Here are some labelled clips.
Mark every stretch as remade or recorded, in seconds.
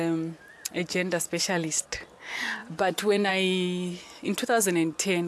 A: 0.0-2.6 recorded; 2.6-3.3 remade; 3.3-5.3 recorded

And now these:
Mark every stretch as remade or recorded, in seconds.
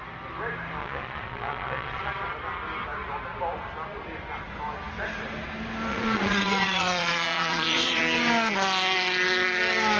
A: 0.0-0.8 recorded; 0.8-2.1 remade; 2.1-5.9 recorded; 5.9-8.0 remade; 8.0-10.0 recorded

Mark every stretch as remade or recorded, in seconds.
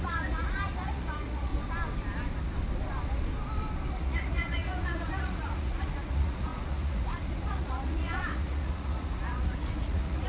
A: 0.0-1.5 remade; 1.5-3.9 recorded; 3.9-10.3 remade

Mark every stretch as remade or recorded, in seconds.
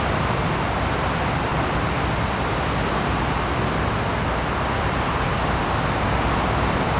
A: 0.0-7.0 recorded